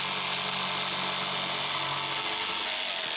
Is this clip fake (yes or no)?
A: no